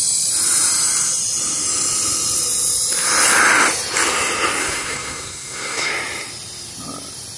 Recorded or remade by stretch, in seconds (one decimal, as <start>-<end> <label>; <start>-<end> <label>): 0.0-4.6 recorded; 4.6-5.9 remade; 5.9-7.4 recorded